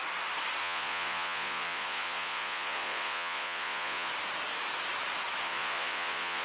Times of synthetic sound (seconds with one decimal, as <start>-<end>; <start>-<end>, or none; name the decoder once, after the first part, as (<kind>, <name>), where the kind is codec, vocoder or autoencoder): 0.6-4.1 (vocoder, Vocos); 5.4-6.4